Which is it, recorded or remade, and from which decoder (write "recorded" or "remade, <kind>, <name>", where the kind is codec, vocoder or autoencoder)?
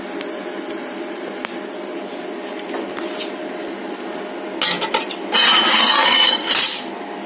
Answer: recorded